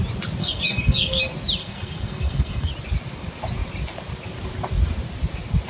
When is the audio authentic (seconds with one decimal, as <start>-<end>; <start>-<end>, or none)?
0.0-0.4; 1.2-1.6; 2.7-5.7